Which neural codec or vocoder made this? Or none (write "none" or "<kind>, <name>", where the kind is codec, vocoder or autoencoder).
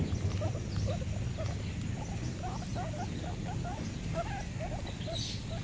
none